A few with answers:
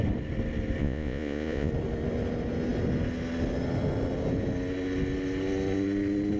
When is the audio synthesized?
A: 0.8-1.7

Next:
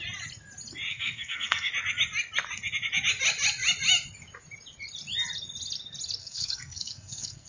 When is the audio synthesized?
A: 0.9-1.7; 6.2-7.5

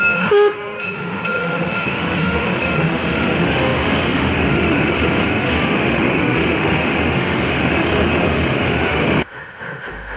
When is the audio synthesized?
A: 0.0-10.2

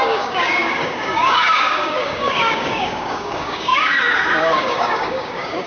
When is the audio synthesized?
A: 0.0-5.7

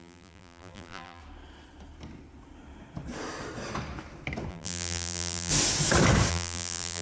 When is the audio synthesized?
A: 0.0-1.2; 4.5-5.5; 6.3-7.0